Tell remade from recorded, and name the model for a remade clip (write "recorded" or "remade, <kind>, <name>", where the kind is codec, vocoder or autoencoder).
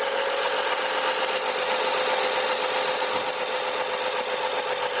recorded